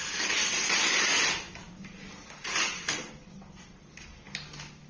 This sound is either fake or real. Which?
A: real